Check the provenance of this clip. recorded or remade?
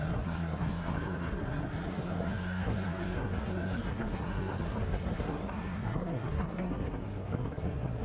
remade